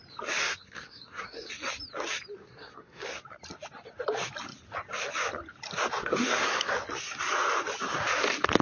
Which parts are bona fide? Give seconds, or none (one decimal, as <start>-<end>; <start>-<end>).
0.0-0.4; 1.5-2.4; 3.2-6.0; 6.7-8.6